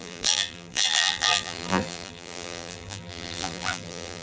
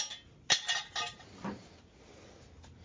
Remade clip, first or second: first